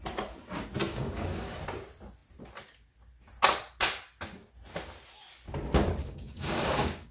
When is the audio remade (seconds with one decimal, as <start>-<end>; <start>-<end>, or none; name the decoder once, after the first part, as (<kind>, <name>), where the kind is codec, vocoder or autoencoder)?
0.9-1.6 (codec, DAC); 6.0-7.1